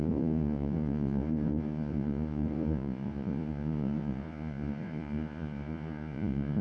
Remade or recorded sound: remade